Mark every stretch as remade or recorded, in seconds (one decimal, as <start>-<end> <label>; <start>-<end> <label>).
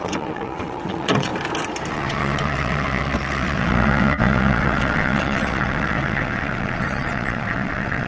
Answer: 0.0-1.3 remade; 1.3-1.9 recorded; 1.9-8.1 remade